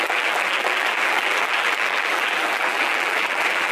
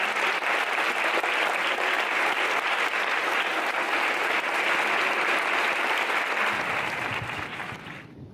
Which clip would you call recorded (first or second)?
second